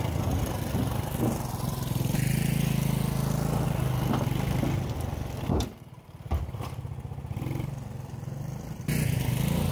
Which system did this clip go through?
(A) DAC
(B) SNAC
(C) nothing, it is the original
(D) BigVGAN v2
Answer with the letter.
C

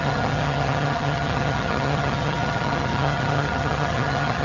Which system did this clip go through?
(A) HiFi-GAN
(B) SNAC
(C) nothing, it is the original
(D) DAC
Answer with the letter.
A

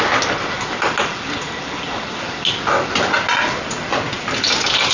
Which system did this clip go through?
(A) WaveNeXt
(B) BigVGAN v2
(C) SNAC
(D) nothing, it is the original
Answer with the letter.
D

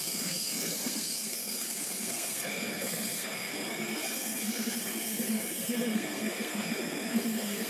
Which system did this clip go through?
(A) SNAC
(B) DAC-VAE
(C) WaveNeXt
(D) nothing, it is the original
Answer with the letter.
A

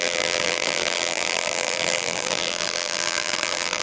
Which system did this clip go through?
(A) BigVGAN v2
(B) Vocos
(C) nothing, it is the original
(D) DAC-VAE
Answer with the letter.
A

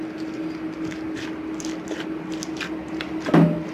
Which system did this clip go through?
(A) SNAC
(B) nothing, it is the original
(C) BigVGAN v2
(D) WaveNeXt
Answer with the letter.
B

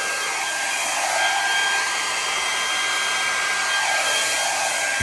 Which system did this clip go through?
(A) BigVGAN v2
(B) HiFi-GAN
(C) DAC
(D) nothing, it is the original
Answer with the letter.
D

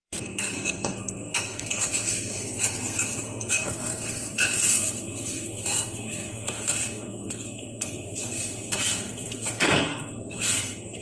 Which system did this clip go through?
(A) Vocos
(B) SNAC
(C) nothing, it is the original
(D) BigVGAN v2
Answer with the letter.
B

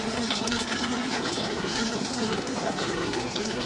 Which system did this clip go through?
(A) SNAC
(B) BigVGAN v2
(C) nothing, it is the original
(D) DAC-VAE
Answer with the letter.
A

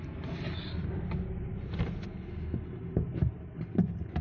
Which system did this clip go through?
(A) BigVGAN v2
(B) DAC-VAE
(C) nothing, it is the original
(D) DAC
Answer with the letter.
C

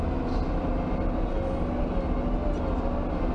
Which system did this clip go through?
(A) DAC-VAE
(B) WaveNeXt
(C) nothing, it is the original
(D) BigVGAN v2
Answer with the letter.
C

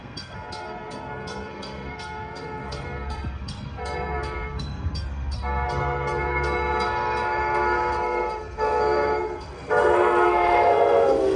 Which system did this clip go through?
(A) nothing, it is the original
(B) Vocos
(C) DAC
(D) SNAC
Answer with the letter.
D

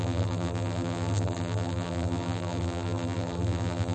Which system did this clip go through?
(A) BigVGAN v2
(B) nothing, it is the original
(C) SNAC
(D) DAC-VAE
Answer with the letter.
A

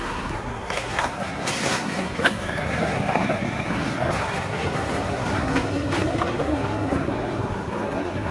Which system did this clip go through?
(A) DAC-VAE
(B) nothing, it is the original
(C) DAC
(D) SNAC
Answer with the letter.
D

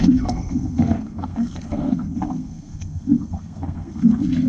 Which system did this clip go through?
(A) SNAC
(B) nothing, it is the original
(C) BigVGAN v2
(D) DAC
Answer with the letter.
A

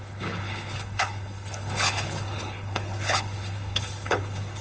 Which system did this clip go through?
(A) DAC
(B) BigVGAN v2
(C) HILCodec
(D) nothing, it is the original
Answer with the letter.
C